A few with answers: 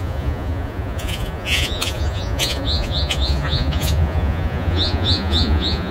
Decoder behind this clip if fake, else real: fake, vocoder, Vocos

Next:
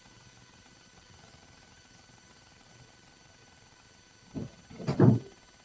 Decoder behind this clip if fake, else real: real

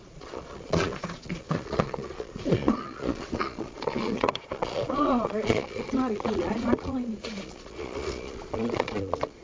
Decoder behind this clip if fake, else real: fake, vocoder, Vocos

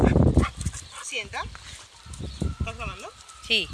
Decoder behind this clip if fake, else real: real